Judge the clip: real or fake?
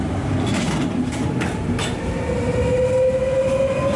real